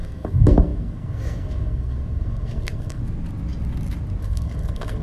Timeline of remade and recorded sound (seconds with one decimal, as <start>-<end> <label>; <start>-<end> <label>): 0.0-3.0 remade; 3.0-4.2 recorded; 4.2-5.0 remade